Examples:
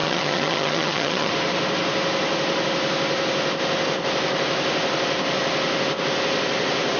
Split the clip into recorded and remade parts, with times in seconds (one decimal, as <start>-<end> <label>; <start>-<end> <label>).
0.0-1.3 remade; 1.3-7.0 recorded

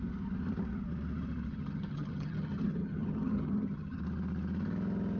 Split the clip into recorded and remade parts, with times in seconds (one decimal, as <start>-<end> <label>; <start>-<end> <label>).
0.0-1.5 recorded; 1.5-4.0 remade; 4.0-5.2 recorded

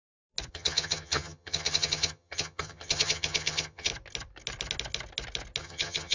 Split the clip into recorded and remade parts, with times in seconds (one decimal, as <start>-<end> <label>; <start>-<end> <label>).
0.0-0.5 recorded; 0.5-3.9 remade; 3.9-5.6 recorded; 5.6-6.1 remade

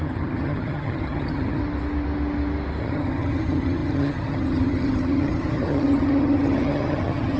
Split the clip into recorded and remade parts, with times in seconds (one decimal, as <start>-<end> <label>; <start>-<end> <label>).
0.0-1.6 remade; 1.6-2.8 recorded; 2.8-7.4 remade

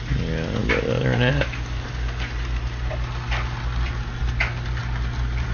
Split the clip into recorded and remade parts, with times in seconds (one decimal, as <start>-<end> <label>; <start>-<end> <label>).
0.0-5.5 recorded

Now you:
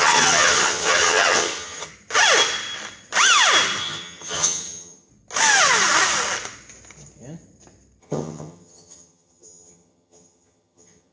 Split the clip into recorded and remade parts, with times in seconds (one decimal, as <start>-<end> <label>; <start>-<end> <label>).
0.0-1.9 remade; 1.9-3.8 recorded; 3.8-5.1 remade; 5.1-8.0 recorded; 8.0-11.1 remade